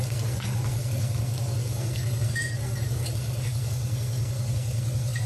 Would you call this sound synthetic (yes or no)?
yes